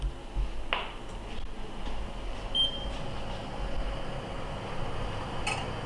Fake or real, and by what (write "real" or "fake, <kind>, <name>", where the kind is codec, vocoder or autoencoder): real